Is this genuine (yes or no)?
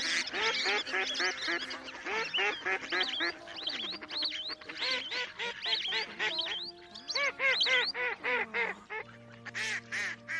yes